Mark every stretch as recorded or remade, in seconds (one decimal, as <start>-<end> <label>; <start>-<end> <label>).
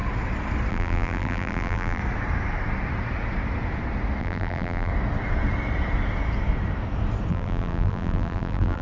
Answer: 0.0-0.7 recorded; 0.7-2.0 remade; 2.0-4.2 recorded; 4.2-4.9 remade; 4.9-7.3 recorded; 7.3-8.8 remade